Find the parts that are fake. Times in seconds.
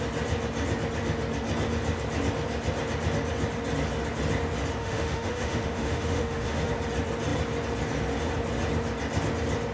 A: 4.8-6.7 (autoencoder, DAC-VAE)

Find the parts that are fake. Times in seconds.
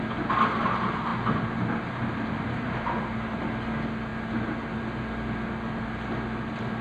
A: none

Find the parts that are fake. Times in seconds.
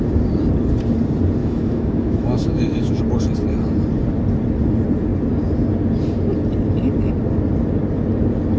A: 1.4-3.0 (autoencoder, DAC-VAE)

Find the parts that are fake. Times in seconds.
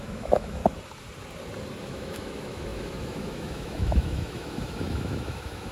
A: 0.0-0.6 (autoencoder, DAC-VAE); 1.8-5.7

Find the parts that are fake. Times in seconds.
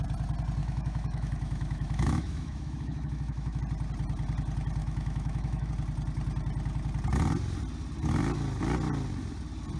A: 0.6-3.6 (autoencoder, DAC-VAE); 4.8-5.7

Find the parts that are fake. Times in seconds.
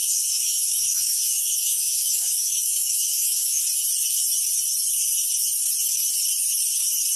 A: 0.0-3.6 (autoencoder, DAC-VAE)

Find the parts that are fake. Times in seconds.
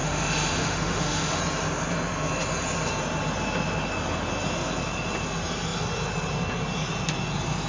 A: 0.0-1.4 (autoencoder, DAC-VAE)